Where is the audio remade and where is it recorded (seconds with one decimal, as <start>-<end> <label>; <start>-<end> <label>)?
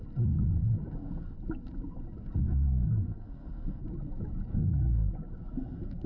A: 0.0-2.4 recorded; 2.4-3.8 remade; 3.8-4.5 recorded; 4.5-5.1 remade; 5.1-6.1 recorded